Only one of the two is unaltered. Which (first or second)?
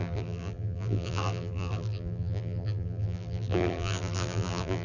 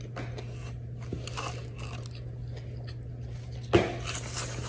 second